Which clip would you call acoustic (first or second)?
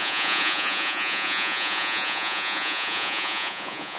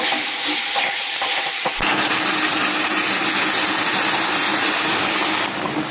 second